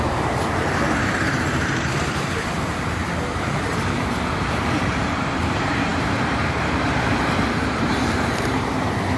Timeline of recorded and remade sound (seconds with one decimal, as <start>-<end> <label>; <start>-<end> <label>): 0.0-9.2 remade